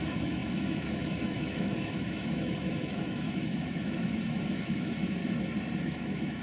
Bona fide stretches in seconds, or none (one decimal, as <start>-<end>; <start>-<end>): 5.2-5.8